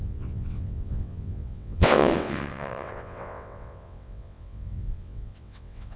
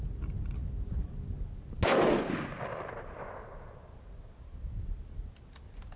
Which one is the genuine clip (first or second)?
second